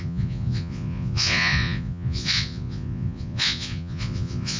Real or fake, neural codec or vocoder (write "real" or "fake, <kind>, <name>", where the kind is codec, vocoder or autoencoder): fake, vocoder, Vocos